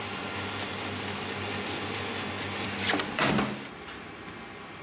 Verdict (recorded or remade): recorded